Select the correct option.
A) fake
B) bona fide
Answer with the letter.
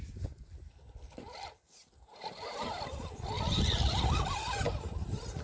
B